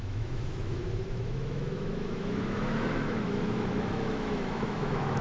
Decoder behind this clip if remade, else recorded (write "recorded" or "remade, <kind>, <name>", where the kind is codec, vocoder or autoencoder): remade, autoencoder, DAC-VAE